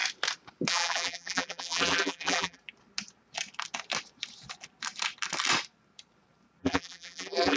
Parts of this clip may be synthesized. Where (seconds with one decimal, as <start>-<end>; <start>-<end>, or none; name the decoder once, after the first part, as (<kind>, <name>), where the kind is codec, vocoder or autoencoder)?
0.7-2.6 (vocoder, BigVGAN v2); 6.6-7.6